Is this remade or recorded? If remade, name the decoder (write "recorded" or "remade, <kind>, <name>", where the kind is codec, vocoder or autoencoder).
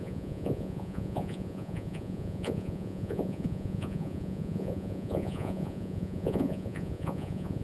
remade, vocoder, Vocos